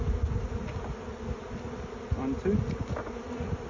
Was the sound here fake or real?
real